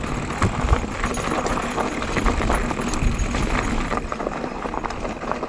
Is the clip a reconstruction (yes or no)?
no